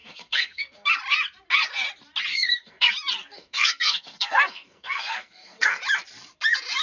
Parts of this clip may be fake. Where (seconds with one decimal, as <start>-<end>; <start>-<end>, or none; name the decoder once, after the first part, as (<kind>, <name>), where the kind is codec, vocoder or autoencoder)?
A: 0.0-0.9 (codec, SNAC); 2.3-2.9; 3.3-5.8